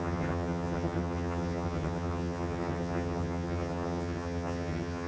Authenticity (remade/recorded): remade